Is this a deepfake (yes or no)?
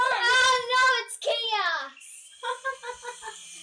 no